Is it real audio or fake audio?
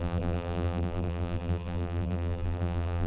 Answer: fake